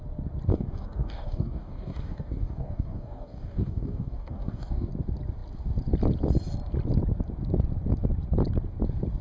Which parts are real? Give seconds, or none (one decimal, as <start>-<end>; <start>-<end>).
0.0-0.5; 4.9-9.2